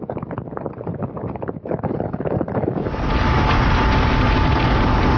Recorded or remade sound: recorded